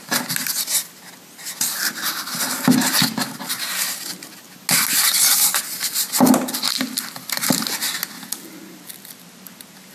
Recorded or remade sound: recorded